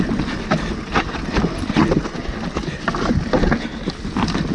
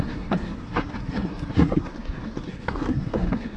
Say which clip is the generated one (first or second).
second